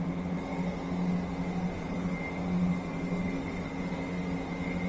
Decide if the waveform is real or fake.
real